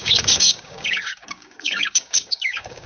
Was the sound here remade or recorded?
remade